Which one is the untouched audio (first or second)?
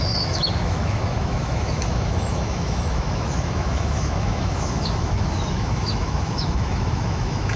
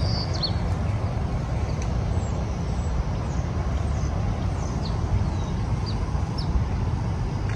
second